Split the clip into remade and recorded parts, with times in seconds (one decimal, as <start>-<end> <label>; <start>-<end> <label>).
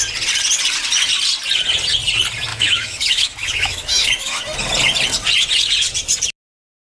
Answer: 0.0-2.5 recorded; 2.5-4.4 remade; 4.4-6.8 recorded